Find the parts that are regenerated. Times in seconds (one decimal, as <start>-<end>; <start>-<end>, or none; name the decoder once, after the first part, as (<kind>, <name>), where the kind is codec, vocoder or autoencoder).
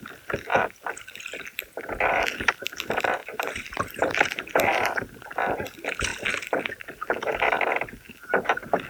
0.5-1.2 (vocoder, BigVGAN v2); 3.2-4.5